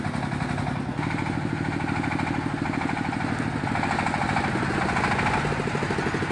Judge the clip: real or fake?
real